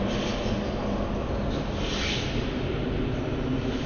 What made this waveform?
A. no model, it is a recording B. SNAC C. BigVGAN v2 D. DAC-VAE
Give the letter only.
A